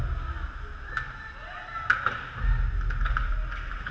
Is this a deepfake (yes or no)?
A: no